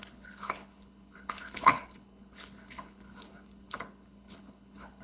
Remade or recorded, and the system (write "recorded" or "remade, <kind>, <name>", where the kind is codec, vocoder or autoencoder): remade, codec, HILCodec